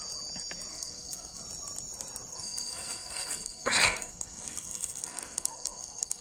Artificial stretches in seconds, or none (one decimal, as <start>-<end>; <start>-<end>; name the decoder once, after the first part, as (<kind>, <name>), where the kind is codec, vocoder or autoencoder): 0.7-1.4 (codec, SNAC); 2.3-6.2